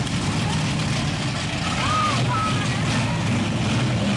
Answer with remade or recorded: recorded